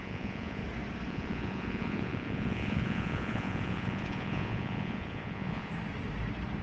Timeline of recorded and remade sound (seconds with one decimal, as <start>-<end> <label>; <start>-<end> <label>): 0.0-0.6 remade; 0.6-1.1 recorded; 1.1-5.7 remade; 5.7-6.6 recorded